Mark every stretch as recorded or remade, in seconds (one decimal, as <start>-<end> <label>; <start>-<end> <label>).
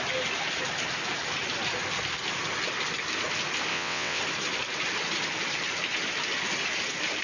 0.0-3.7 recorded; 3.7-4.2 remade; 4.2-7.2 recorded